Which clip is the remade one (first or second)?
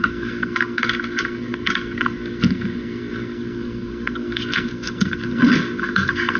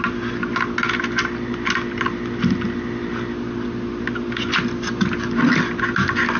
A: first